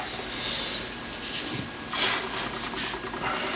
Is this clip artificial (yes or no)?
no